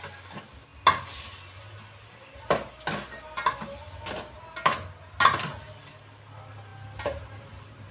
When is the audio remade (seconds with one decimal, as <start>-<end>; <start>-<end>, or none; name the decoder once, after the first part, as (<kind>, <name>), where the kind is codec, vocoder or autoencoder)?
none